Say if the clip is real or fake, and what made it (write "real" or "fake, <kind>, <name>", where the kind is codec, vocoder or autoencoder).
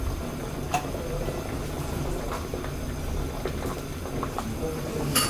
real